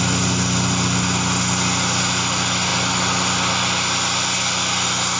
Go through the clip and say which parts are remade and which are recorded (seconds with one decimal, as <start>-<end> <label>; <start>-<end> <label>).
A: 0.0-5.2 recorded